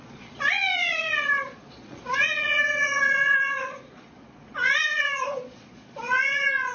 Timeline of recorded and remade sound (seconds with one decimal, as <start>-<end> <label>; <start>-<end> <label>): 0.0-6.7 remade